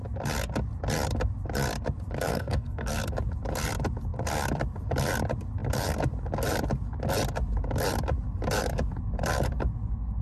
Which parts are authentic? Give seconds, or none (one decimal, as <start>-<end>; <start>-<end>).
0.0-2.3; 2.9-10.2